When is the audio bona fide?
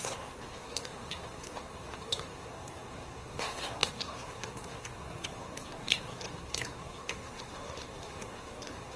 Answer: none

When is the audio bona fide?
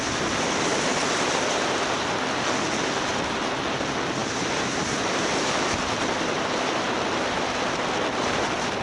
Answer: 0.0-8.8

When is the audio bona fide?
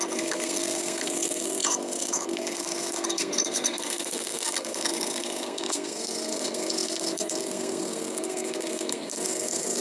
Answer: none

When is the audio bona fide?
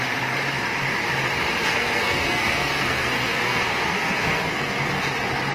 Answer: 0.0-1.6; 4.9-5.5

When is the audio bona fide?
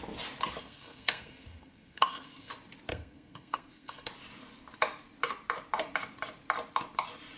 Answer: 0.0-0.6; 2.5-2.9; 4.1-7.4